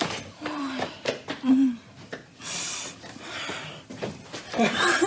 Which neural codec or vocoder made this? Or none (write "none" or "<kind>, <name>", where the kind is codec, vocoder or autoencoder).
vocoder, BigVGAN v2